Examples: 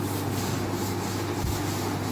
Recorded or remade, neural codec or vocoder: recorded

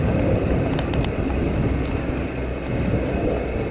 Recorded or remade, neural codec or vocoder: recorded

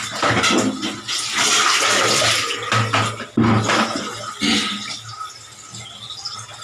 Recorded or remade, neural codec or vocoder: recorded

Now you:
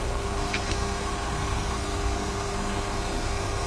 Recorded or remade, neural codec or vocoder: remade, codec, SNAC